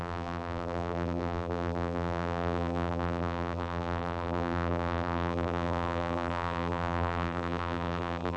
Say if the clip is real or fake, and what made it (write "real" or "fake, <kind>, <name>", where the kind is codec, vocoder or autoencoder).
fake, vocoder, BigVGAN v2